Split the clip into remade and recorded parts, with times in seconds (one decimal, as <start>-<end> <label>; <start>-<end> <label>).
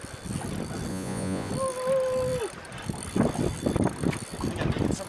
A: 0.0-0.9 recorded; 0.9-1.5 remade; 1.5-5.1 recorded